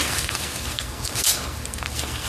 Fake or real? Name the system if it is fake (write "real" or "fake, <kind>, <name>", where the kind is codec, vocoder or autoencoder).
fake, codec, SNAC